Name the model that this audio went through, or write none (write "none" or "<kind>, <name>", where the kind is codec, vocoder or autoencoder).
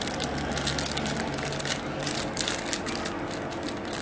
none